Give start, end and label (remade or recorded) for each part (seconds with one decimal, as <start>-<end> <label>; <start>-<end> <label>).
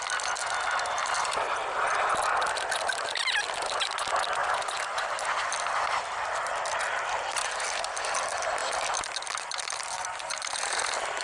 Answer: 0.0-11.2 recorded